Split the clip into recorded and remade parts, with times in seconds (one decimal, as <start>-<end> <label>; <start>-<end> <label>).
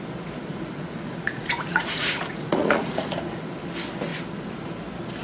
0.0-0.4 recorded; 0.4-3.5 remade; 3.5-5.2 recorded